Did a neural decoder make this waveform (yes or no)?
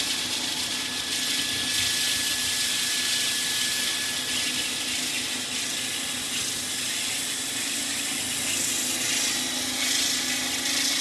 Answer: no